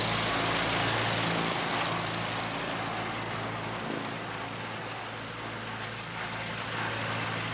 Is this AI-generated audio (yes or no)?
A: no